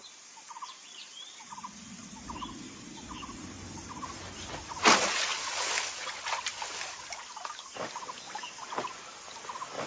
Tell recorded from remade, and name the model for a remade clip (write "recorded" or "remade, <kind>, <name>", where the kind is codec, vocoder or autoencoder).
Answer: recorded